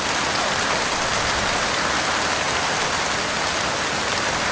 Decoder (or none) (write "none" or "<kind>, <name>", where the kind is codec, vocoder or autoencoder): none